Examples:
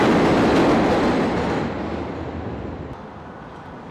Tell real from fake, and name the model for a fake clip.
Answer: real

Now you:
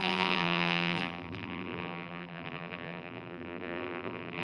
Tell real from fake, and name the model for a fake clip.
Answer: fake, vocoder, BigVGAN v2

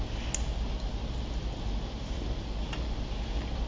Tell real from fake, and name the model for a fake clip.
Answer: real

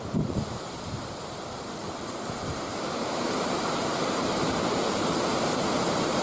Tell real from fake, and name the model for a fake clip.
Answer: fake, vocoder, BigVGAN v2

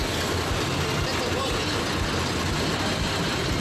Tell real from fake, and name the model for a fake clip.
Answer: real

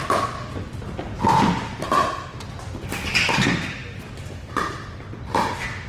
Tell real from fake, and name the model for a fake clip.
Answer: real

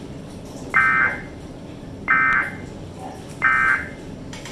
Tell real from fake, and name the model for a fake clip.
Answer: real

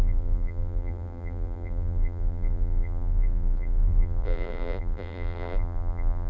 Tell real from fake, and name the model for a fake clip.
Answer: fake, vocoder, BigVGAN v2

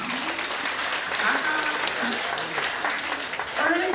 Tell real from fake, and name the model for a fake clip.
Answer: fake, vocoder, BigVGAN v2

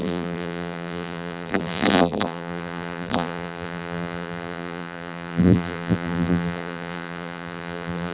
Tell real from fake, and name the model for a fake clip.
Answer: fake, vocoder, BigVGAN v2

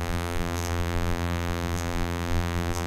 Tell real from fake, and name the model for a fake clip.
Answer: fake, vocoder, BigVGAN v2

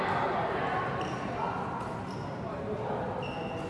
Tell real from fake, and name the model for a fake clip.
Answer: real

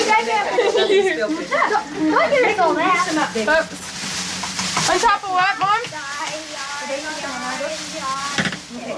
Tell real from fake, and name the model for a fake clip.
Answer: real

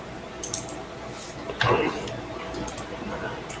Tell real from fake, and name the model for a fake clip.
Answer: real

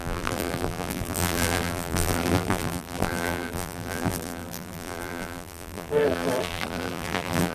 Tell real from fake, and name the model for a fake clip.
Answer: fake, vocoder, BigVGAN v2